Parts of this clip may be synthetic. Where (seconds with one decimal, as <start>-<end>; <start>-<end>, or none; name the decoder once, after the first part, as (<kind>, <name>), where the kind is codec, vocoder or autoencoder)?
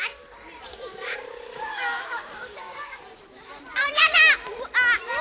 0.7-3.0 (codec, DAC)